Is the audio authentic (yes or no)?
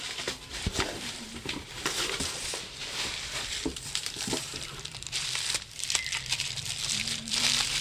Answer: no